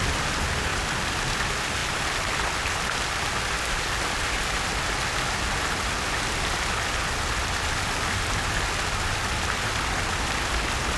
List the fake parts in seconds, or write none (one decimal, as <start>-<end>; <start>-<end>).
none